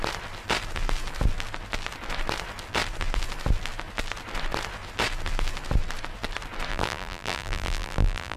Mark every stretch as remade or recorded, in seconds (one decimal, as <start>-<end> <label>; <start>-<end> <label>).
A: 0.0-6.7 recorded; 6.7-8.4 remade